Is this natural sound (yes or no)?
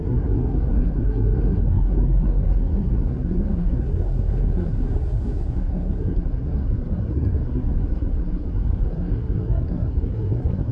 no